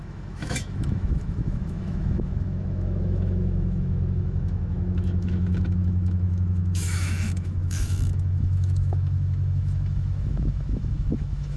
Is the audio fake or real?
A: fake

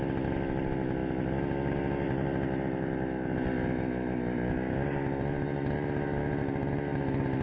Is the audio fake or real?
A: real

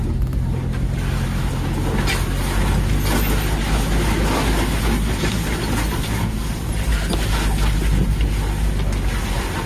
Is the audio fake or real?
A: real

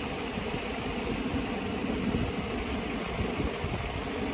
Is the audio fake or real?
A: real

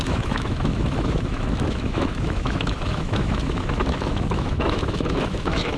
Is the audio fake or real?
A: fake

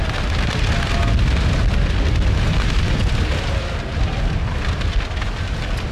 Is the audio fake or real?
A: real